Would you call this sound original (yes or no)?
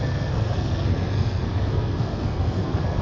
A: no